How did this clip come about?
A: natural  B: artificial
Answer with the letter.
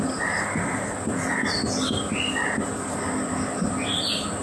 A